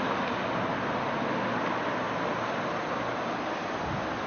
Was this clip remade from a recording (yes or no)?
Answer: no